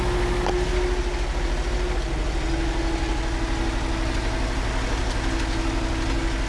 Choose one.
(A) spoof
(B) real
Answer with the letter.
B